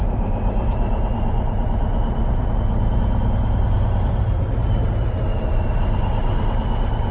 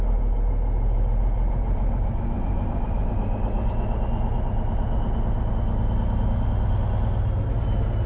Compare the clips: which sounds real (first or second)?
second